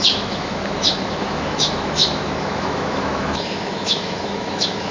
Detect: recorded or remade remade